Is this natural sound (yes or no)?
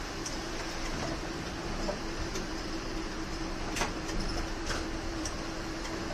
no